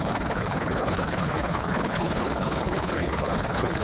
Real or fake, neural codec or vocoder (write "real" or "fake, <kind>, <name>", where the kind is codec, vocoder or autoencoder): fake, codec, HILCodec